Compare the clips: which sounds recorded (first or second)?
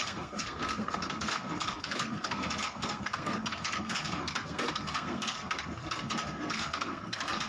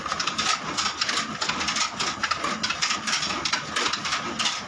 second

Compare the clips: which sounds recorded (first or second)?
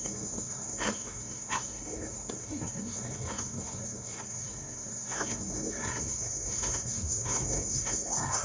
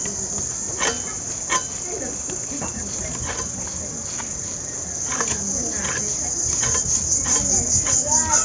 second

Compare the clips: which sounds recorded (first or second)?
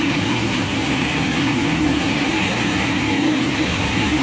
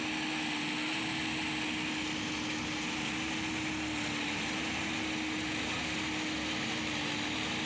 second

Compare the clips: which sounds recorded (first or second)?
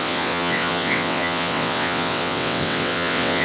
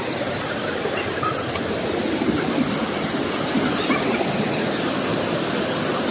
second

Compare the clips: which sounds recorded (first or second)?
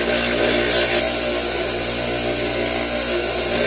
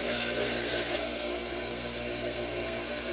first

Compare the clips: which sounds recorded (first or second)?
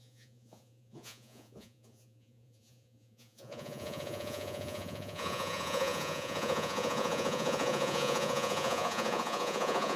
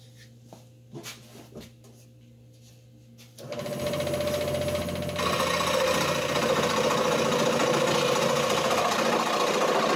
second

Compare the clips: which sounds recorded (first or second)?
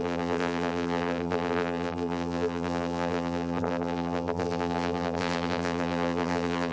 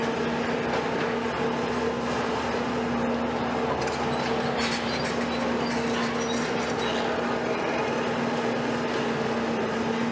second